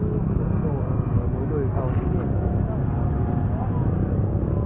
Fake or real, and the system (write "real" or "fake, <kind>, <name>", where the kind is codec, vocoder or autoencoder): real